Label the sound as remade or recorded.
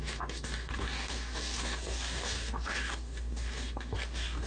remade